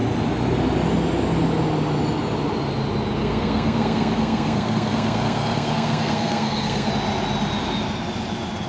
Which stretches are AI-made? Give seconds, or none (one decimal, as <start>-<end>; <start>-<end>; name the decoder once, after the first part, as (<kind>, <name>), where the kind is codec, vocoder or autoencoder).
3.2-6.9 (codec, SNAC)